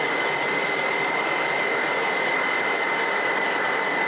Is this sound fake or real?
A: real